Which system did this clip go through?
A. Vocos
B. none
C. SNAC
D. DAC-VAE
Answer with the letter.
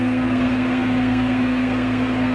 C